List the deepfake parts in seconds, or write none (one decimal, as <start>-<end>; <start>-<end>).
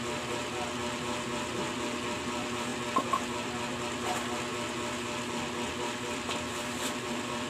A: none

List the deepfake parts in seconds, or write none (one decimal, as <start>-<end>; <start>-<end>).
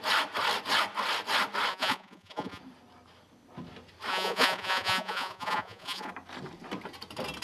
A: 1.7-2.6; 4.1-6.1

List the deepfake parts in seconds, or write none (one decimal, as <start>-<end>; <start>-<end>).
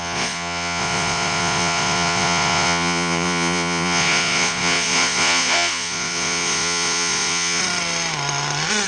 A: 0.0-7.6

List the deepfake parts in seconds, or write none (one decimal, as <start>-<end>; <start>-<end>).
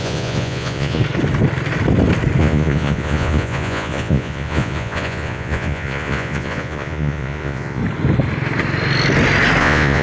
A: 0.0-1.0; 2.4-7.8; 9.6-10.0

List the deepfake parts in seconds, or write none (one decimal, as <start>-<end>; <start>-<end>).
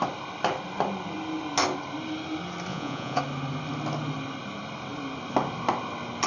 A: 2.7-3.2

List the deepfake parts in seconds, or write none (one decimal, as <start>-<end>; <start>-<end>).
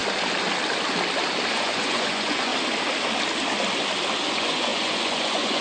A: 1.5-2.5; 4.3-5.6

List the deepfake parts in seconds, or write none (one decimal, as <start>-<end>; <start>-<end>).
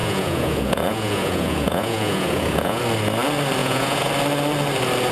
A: 0.0-2.8; 3.6-4.1